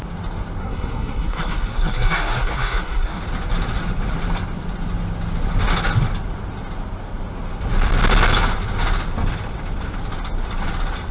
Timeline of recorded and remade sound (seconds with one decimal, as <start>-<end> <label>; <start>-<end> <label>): 0.0-0.6 recorded; 0.6-3.2 remade; 3.2-11.1 recorded